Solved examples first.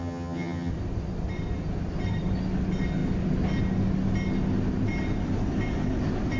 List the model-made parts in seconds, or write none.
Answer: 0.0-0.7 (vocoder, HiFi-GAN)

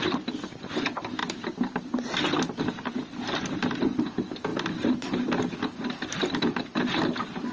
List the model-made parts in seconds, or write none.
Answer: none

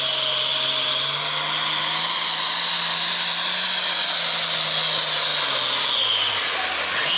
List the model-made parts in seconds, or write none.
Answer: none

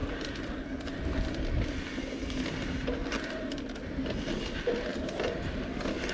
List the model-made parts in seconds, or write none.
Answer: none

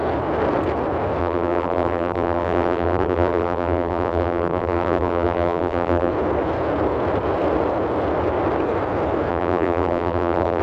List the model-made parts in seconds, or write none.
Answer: 1.2-6.1 (vocoder, BigVGAN v2); 9.3-10.6